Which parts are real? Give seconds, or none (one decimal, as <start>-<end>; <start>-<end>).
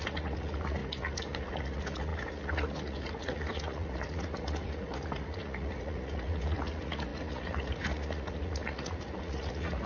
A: none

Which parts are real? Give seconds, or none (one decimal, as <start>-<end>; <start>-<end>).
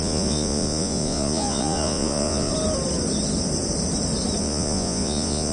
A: 2.5-4.4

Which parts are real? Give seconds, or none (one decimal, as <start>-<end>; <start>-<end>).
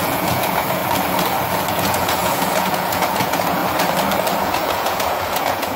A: 0.8-1.7; 3.6-4.4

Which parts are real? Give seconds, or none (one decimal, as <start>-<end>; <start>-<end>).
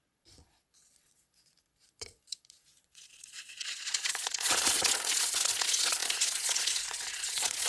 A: none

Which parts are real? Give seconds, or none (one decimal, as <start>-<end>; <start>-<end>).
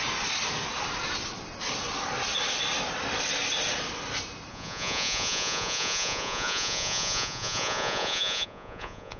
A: 0.0-4.5